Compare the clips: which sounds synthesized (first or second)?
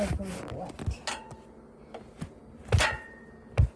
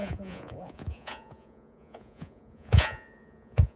second